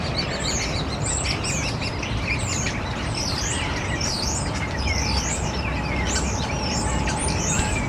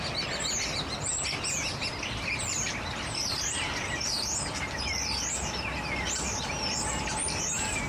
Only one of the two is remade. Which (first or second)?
first